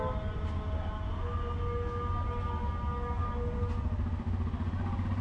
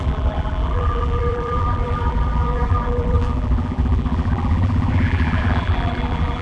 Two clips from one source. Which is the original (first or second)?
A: first